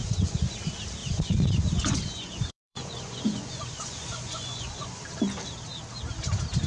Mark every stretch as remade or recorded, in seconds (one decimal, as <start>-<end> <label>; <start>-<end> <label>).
0.0-0.6 remade; 0.6-1.0 recorded; 1.0-5.0 remade; 5.0-6.7 recorded